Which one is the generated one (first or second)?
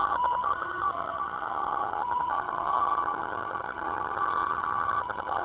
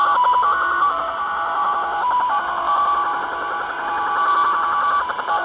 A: first